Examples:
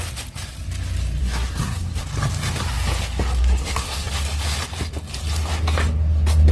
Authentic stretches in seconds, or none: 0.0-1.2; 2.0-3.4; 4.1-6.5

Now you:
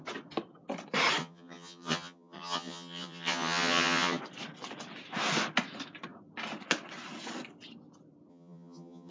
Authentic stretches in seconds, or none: 0.0-1.2; 4.2-8.3